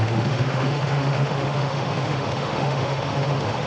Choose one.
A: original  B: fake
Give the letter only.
B